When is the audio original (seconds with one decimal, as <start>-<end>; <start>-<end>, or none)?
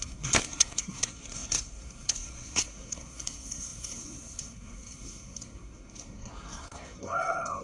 none